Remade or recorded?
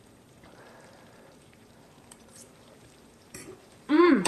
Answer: remade